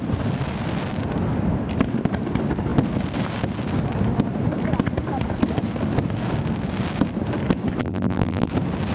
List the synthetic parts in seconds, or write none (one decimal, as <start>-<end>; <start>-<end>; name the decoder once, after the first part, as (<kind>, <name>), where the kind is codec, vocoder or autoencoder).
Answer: 7.8-8.5 (vocoder, BigVGAN v2)